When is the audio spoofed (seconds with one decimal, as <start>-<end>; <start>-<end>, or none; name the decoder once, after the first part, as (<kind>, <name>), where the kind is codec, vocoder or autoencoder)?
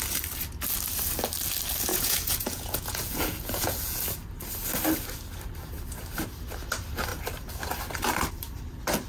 1.9-4.0 (vocoder, Vocos)